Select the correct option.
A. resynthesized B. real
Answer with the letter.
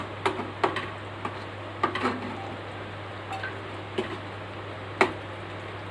B